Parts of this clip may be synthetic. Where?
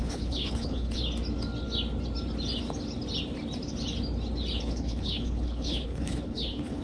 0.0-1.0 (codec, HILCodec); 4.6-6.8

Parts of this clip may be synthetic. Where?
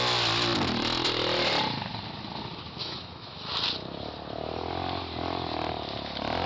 2.8-3.5 (autoencoder, DAC-VAE)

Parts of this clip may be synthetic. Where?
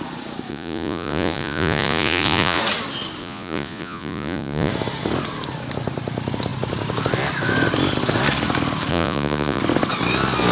0.5-2.6 (vocoder, Vocos); 3.2-4.7; 8.9-9.6